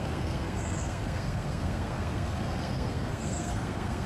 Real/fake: fake